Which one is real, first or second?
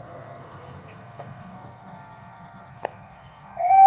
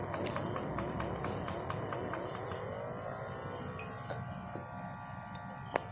second